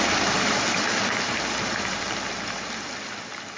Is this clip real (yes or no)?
no